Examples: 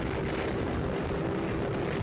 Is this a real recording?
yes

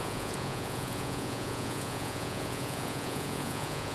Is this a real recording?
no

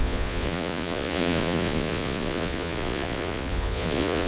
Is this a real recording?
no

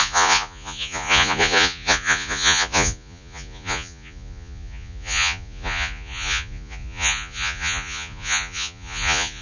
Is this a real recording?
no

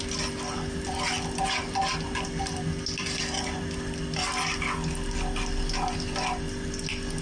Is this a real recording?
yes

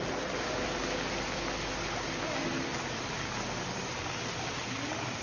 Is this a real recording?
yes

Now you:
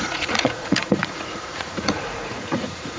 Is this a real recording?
no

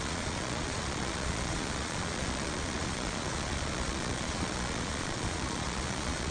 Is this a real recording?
no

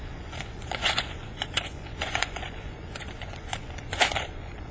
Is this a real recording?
no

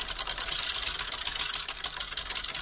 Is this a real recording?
yes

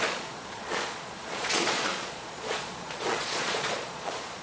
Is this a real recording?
no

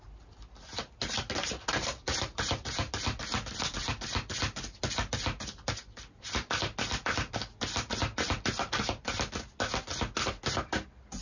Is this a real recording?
yes